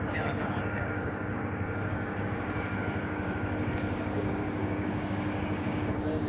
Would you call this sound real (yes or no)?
no